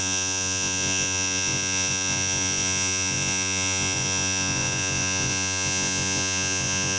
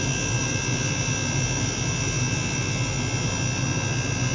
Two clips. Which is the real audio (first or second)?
second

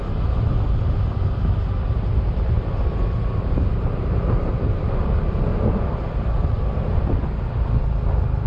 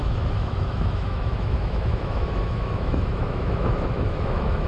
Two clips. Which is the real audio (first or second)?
first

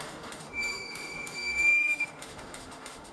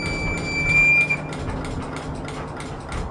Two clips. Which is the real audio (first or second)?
second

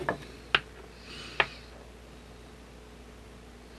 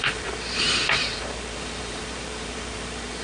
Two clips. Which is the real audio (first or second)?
first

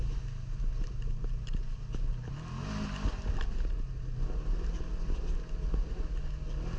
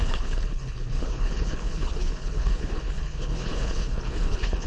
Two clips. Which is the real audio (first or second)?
first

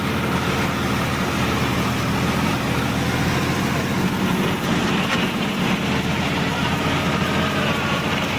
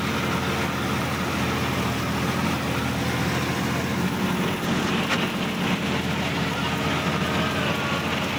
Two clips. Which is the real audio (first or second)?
second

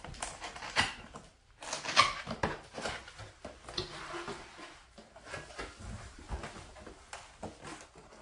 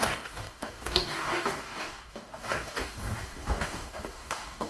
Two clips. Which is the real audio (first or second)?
first